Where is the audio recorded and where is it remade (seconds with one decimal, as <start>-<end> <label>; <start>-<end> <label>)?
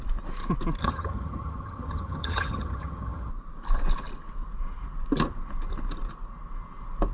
0.0-0.8 recorded; 0.8-3.3 remade; 3.3-7.1 recorded